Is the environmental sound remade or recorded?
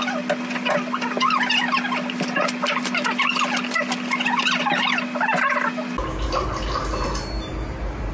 recorded